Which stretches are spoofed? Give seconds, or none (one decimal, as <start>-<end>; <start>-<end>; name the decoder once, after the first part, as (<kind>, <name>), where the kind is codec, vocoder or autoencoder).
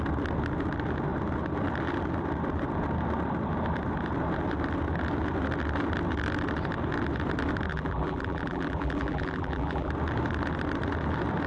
7.7-9.9 (vocoder, BigVGAN v2)